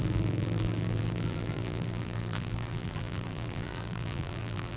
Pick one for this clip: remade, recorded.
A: remade